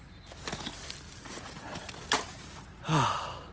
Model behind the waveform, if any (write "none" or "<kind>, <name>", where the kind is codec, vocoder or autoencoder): none